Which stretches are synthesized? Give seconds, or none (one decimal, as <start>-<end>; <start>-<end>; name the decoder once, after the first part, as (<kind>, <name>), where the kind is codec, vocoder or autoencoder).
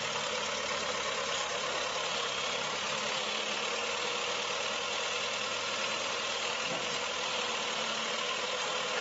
none